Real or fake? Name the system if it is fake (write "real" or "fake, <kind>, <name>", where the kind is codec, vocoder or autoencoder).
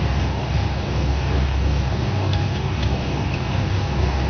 fake, codec, DAC